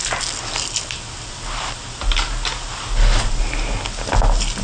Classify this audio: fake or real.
real